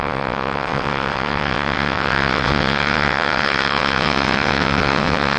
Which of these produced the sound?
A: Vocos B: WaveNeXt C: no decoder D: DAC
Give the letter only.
B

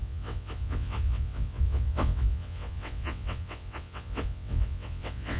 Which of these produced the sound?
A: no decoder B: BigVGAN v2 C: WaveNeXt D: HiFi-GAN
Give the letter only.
C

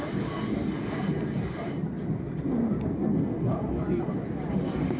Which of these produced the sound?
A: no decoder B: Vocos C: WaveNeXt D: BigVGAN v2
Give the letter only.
A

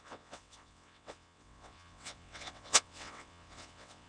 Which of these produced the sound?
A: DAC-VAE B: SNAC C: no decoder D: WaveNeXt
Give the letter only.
D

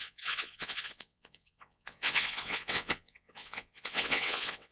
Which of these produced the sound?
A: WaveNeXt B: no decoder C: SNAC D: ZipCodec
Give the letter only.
A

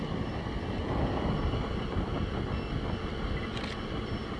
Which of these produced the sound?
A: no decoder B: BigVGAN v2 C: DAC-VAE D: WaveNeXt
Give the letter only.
A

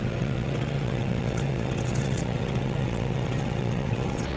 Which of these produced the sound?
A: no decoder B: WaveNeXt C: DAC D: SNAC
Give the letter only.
B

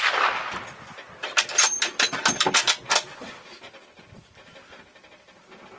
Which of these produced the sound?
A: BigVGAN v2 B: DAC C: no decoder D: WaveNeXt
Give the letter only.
C